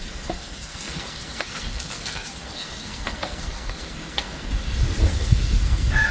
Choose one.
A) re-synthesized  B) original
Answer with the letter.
A